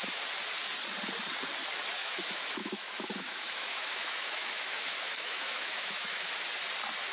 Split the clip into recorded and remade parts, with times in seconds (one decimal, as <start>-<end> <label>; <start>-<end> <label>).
0.0-2.0 recorded; 2.0-6.3 remade; 6.3-7.1 recorded